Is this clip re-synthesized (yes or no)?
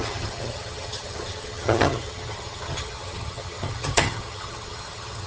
yes